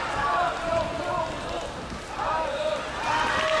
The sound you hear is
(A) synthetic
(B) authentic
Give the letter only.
B